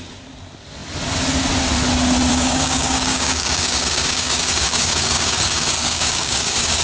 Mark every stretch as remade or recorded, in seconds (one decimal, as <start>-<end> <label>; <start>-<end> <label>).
0.0-2.3 recorded; 2.3-6.8 remade